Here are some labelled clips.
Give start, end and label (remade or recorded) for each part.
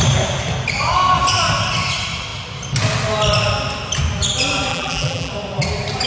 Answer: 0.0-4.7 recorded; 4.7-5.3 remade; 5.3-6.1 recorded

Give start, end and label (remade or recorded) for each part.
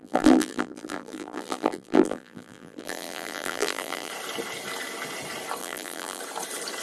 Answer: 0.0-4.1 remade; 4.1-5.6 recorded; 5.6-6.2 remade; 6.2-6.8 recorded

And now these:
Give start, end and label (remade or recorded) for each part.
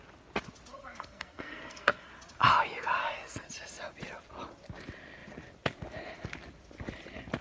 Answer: 0.0-0.7 recorded; 0.7-2.1 remade; 2.1-3.0 recorded; 3.0-3.5 remade; 3.5-7.4 recorded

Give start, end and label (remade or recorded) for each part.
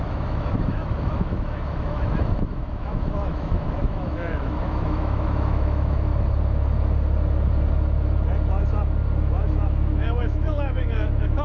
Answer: 0.0-6.1 remade; 6.1-9.2 recorded; 9.2-11.4 remade